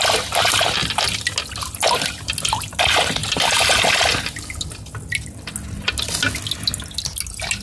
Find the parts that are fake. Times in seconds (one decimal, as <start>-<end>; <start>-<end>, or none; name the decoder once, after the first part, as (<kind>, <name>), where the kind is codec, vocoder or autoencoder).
3.2-3.8 (vocoder, BigVGAN v2)